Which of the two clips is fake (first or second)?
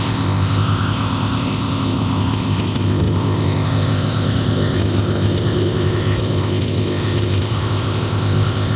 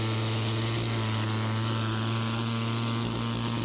first